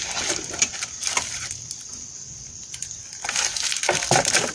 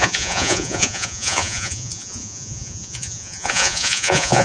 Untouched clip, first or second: first